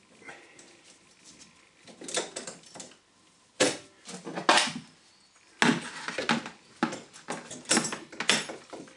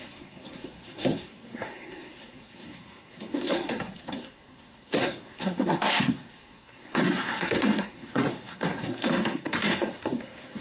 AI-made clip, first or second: second